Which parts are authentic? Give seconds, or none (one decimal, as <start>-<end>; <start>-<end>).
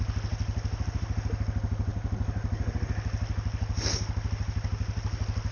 0.0-5.5